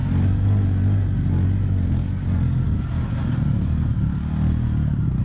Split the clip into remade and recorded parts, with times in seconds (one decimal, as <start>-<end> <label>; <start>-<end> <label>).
0.0-5.2 recorded